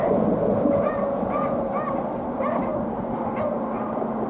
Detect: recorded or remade recorded